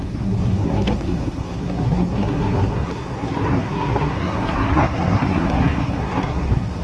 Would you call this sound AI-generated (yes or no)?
yes